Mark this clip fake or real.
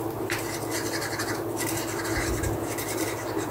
real